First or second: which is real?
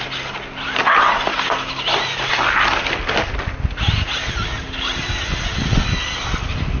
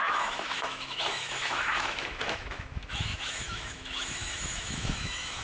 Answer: first